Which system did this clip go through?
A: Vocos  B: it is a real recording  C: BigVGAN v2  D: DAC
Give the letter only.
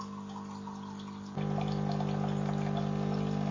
B